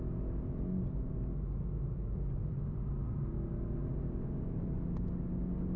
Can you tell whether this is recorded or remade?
recorded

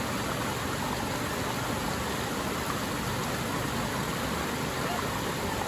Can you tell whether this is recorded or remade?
recorded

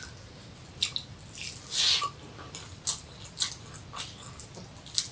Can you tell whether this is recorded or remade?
recorded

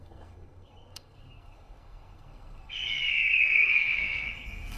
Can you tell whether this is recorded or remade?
remade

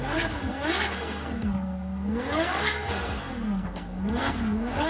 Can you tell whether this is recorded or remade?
remade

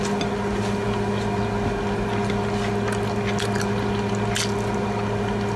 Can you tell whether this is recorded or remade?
recorded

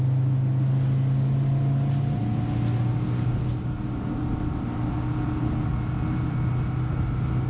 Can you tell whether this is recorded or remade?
recorded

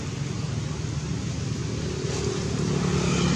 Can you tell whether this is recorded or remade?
recorded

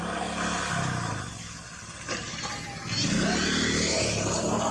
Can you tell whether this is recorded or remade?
recorded